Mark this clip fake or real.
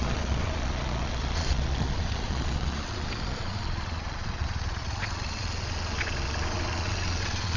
fake